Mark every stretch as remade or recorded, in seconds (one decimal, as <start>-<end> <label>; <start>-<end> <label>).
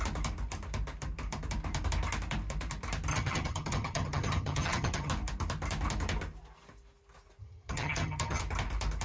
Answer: 0.0-3.1 recorded; 3.1-5.1 remade; 5.1-7.4 recorded; 7.4-8.4 remade; 8.4-9.0 recorded